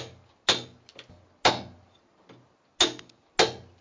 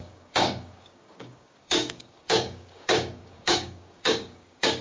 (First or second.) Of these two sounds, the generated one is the second